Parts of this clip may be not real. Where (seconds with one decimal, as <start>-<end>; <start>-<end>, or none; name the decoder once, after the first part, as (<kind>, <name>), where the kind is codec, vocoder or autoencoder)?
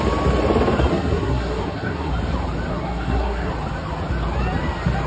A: 0.9-2.1 (codec, SNAC); 2.7-3.5